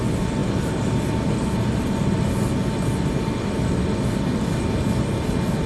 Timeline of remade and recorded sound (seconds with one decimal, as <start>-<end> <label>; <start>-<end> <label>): 0.0-5.7 recorded